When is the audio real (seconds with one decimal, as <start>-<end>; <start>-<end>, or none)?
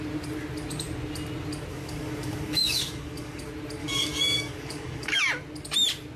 0.0-1.7; 3.4-3.8; 5.2-6.2